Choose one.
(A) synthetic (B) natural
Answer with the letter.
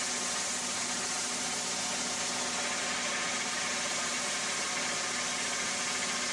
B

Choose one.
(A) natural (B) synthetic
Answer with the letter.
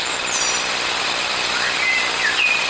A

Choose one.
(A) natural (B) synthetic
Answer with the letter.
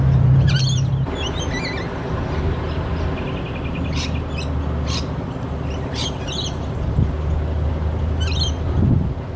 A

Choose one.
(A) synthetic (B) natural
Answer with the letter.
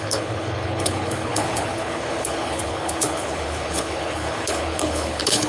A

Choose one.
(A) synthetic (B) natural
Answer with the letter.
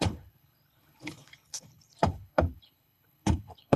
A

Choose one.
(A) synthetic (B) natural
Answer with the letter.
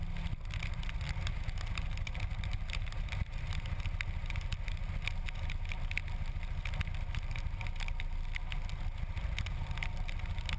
B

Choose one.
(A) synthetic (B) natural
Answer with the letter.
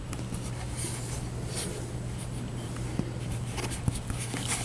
B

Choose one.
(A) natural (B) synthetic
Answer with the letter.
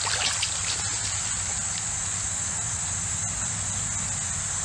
A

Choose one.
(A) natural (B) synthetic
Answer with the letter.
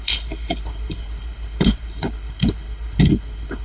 B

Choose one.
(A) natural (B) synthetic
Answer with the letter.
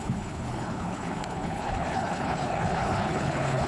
B